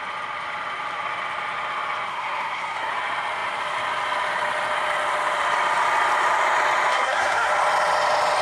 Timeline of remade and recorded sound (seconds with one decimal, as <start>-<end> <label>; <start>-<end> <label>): 0.0-2.1 recorded; 2.1-2.9 remade; 2.9-6.9 recorded; 6.9-7.5 remade; 7.5-8.4 recorded